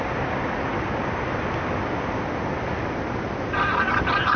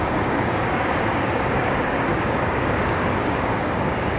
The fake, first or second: second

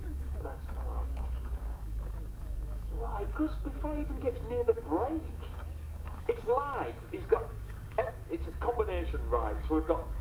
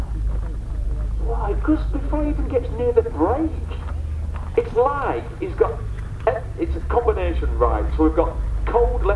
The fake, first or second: first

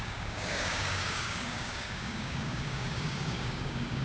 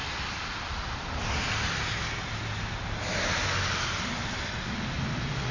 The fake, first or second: first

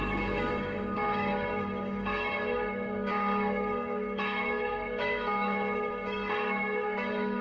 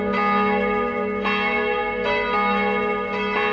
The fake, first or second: first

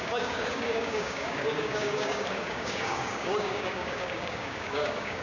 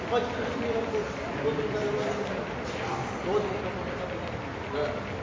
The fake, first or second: first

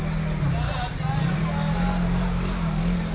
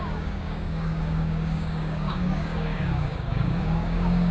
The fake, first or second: second